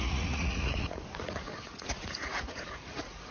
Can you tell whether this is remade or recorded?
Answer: remade